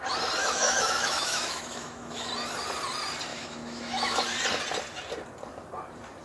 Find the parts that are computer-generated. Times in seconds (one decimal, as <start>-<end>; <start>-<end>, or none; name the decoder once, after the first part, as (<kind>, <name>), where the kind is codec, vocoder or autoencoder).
0.4-2.3 (autoencoder, DAC-VAE); 3.3-4.2